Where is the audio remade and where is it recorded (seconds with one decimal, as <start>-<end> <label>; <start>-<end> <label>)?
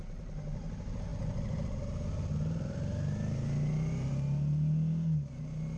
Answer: 0.0-5.8 recorded